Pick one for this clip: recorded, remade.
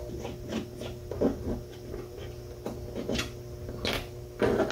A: recorded